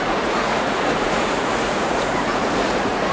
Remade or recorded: remade